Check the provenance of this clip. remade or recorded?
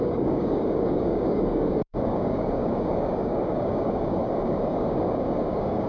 remade